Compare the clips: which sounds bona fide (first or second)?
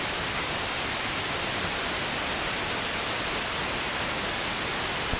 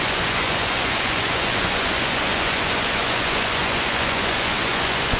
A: first